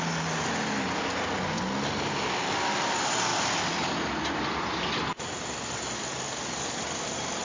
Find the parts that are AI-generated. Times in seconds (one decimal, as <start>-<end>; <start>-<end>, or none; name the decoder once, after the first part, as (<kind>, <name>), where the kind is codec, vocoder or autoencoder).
3.3-7.4 (vocoder, BigVGAN v2)